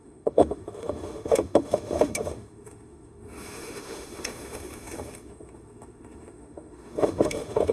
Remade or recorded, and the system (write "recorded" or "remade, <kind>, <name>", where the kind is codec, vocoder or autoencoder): remade, autoencoder, DAC-VAE